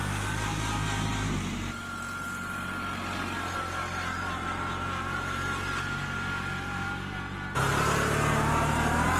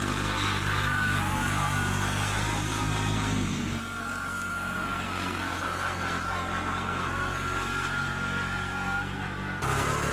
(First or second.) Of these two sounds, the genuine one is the first